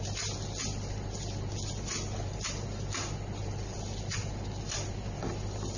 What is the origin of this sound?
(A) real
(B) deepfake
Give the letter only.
A